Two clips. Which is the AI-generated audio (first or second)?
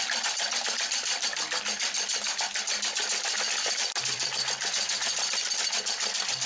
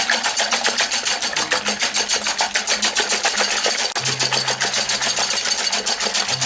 first